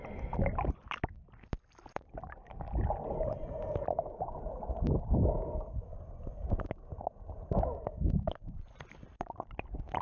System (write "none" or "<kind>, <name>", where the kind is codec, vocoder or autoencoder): none